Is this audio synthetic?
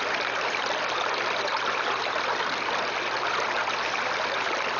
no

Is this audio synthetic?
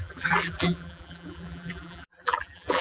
yes